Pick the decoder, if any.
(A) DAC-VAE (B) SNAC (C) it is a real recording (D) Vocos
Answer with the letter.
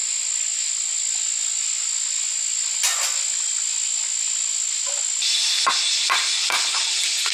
C